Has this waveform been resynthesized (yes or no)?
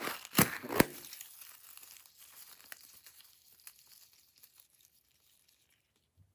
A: no